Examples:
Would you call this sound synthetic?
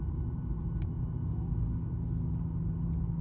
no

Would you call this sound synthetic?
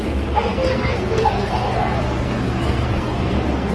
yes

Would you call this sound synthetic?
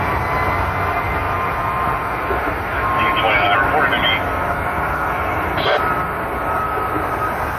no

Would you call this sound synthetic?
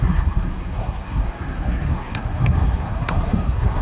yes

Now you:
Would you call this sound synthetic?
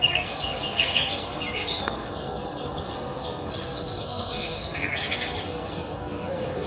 yes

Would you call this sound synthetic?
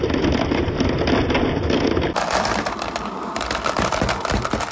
no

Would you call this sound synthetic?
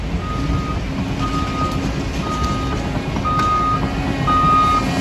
no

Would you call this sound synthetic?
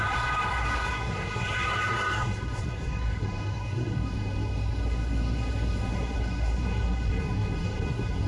yes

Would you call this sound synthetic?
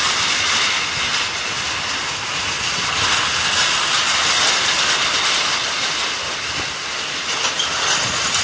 no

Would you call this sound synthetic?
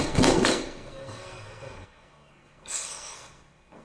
yes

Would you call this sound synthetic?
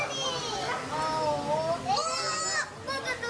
no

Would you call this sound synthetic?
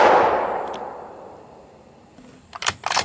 no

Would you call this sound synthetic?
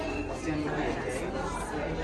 no